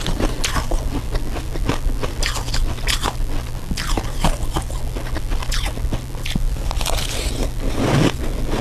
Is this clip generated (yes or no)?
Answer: no